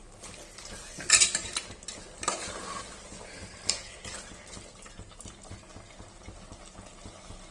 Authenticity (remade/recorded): recorded